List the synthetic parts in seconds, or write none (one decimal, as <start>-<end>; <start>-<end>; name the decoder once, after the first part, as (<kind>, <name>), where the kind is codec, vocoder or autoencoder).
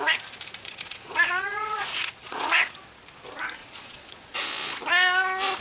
0.6-2.8 (vocoder, Vocos); 3.6-4.4